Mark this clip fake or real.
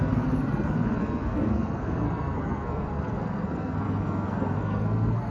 fake